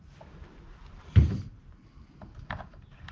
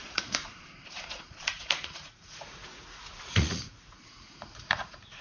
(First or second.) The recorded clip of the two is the first